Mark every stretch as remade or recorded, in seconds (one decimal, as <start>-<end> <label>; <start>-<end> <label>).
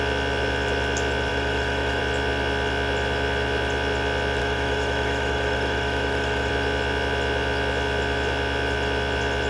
0.0-1.3 recorded; 1.3-2.0 remade; 2.0-4.4 recorded; 4.4-6.5 remade; 6.5-9.5 recorded